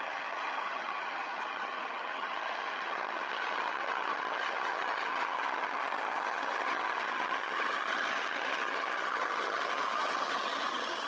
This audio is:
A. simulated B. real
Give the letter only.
A